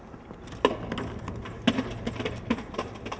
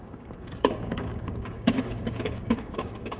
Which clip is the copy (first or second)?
second